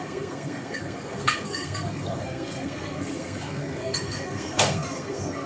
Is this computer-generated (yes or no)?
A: yes